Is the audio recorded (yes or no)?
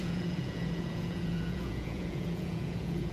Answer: no